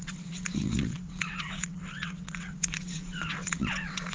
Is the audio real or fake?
fake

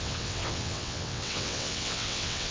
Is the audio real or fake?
fake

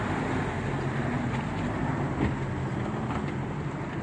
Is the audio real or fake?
real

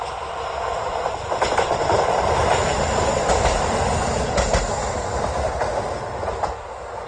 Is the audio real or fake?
real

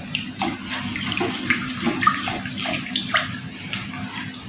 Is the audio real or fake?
real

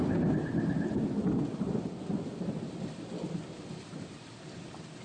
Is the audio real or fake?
real